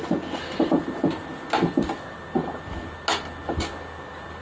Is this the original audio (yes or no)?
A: yes